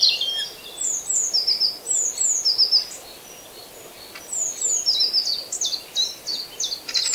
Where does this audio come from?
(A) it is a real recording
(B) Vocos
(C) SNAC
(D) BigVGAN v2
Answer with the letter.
A